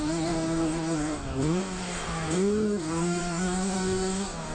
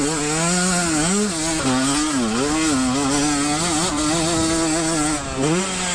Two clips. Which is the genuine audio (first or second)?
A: second